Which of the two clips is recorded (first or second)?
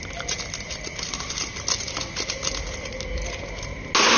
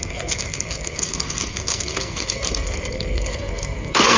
first